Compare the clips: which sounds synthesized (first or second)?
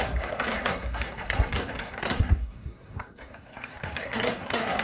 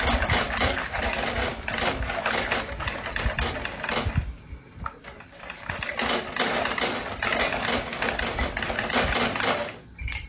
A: first